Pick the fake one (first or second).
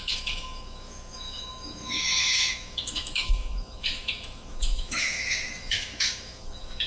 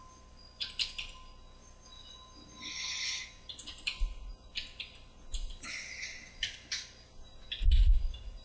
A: first